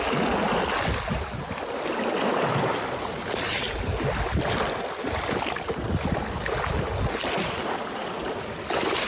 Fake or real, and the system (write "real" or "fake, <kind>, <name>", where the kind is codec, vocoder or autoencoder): real